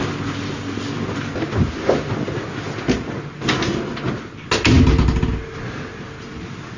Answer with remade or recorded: recorded